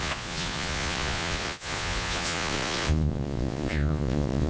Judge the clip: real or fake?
fake